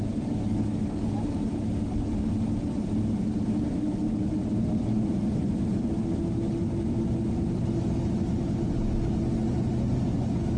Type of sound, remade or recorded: recorded